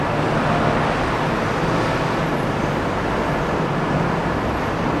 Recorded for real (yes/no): yes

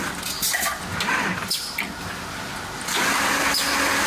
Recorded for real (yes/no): yes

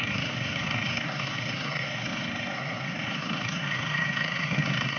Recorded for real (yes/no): no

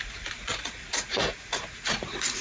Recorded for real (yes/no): no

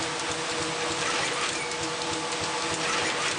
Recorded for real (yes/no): yes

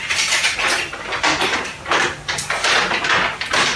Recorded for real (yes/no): yes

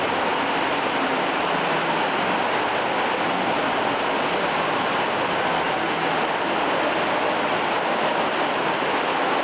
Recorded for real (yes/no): yes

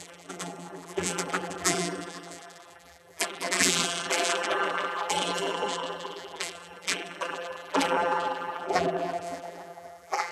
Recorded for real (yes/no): no